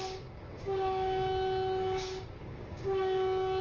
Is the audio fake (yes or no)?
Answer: yes